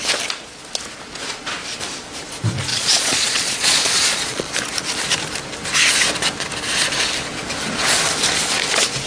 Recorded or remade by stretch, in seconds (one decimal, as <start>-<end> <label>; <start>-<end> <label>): 0.0-2.7 recorded; 2.7-4.5 remade; 4.5-9.1 recorded